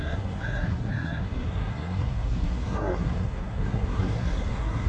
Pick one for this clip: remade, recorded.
remade